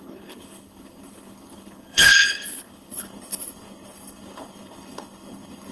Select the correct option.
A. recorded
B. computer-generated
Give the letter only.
B